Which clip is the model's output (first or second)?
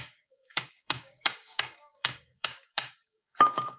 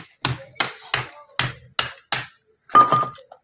first